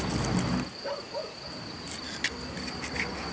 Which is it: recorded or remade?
recorded